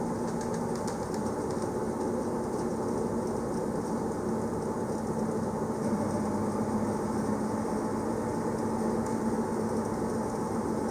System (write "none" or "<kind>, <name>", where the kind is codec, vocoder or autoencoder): none